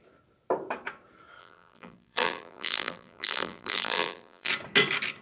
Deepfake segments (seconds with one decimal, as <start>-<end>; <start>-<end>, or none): 1.4-4.5

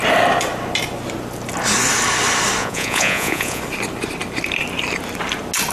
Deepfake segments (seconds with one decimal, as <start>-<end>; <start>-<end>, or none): 2.6-3.6

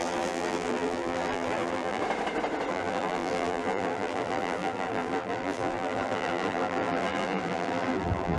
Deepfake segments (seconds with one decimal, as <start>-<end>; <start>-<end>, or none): 0.0-2.0; 2.7-8.4